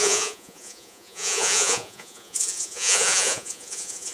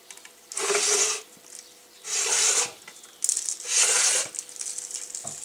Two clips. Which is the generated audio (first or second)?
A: first